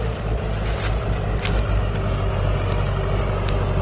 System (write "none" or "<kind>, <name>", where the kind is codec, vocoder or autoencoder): none